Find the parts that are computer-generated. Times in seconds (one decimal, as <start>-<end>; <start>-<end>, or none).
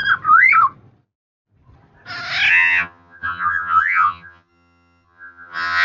2.5-5.8